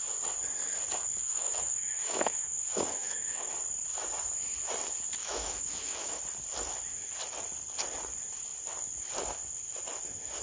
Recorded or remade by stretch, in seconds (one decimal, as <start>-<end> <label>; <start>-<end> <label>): 0.0-1.2 recorded; 1.2-3.5 remade; 3.5-5.2 recorded; 5.2-6.2 remade; 6.2-10.4 recorded